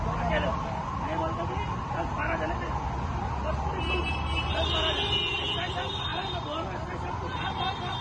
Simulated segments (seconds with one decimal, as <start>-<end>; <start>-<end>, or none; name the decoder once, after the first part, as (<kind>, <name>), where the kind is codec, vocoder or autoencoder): none